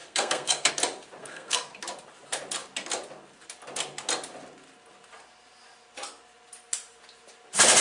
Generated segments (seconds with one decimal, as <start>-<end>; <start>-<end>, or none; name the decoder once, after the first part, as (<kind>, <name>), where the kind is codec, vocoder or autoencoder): 0.0-0.7 (codec, SNAC); 1.2-1.7